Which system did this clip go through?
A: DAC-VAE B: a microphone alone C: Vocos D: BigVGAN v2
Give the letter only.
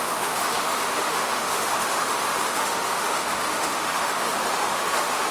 A